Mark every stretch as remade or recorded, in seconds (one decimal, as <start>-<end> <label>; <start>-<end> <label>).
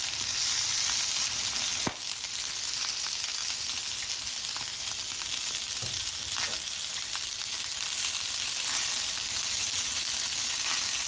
0.0-11.1 recorded